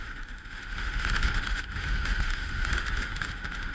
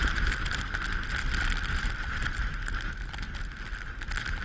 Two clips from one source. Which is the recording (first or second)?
second